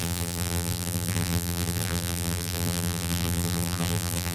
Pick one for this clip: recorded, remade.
remade